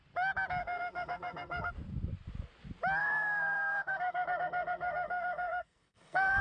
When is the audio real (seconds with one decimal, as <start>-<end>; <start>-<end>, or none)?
0.0-0.6; 1.7-3.0